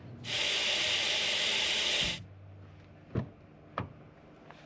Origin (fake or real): real